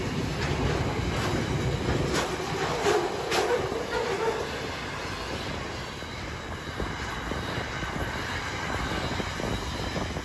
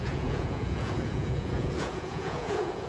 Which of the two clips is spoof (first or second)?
second